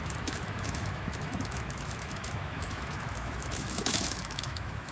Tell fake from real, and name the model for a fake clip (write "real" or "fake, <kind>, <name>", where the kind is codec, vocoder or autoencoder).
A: fake, autoencoder, DAC-VAE